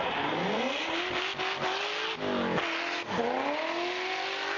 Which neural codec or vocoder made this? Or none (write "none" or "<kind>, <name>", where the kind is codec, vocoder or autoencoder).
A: none